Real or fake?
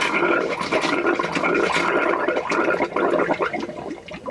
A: real